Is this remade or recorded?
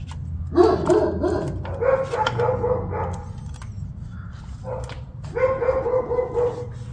recorded